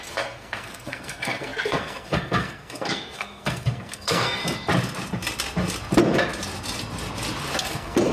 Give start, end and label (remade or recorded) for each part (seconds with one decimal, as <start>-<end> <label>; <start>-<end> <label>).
0.0-4.4 remade; 4.4-7.6 recorded; 7.6-8.1 remade